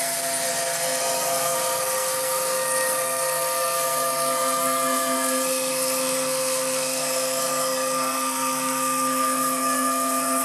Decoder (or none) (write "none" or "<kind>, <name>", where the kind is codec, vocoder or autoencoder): codec, SNAC